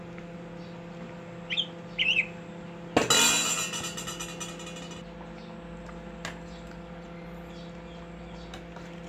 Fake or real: real